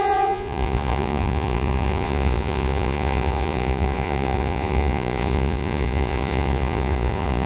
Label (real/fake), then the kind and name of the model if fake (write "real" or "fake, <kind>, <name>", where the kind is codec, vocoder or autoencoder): fake, vocoder, Vocos